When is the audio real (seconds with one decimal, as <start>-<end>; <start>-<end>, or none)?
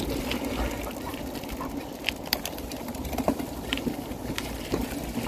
0.0-1.1; 4.3-5.3